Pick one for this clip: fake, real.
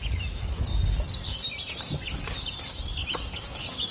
real